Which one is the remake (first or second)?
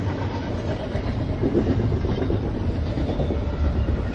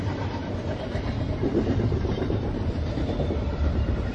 second